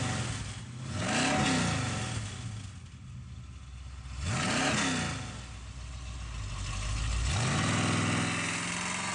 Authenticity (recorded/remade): recorded